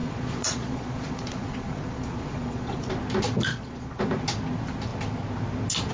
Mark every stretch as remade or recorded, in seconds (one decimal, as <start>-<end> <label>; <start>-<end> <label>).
0.0-2.9 remade; 2.9-3.5 recorded; 3.5-4.0 remade; 4.0-5.9 recorded